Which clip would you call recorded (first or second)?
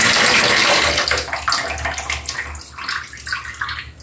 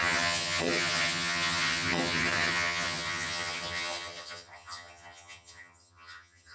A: first